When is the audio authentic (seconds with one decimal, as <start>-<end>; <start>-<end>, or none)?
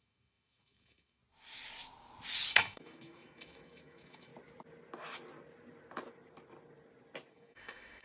1.2-2.5; 4.3-7.3